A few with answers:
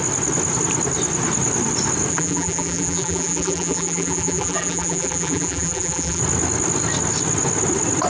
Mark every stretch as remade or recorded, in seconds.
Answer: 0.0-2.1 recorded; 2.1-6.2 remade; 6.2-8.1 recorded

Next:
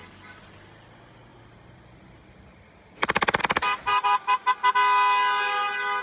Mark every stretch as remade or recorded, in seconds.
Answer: 0.0-1.3 recorded; 1.3-3.4 remade; 3.4-3.8 recorded; 3.8-4.7 remade; 4.7-6.0 recorded

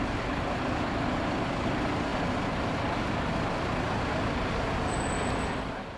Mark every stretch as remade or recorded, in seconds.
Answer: 0.0-6.0 recorded

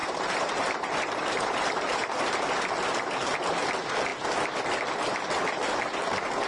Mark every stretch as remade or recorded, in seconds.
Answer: 0.0-2.4 remade; 2.4-6.5 recorded